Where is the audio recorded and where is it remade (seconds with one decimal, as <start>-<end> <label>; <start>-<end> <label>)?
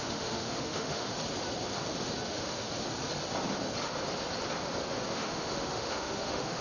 0.0-1.1 remade; 1.1-2.3 recorded; 2.3-2.7 remade; 2.7-5.1 recorded; 5.1-6.6 remade